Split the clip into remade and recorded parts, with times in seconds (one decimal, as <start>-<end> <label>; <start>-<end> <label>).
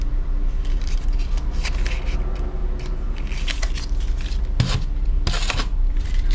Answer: 0.0-2.6 remade; 2.6-5.5 recorded; 5.5-6.3 remade